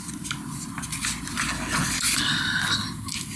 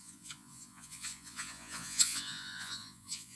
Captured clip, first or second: first